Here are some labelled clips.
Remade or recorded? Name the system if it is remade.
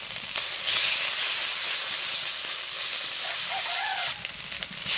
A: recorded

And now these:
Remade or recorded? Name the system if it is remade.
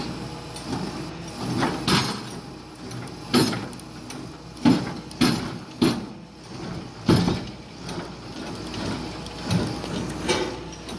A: recorded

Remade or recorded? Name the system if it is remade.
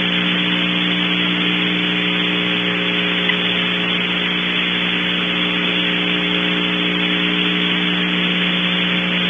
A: recorded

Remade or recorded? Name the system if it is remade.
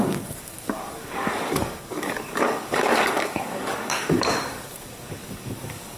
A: remade, codec, DAC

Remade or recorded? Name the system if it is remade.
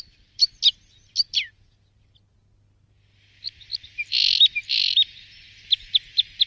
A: recorded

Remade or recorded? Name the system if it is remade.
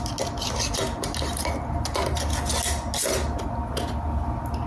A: recorded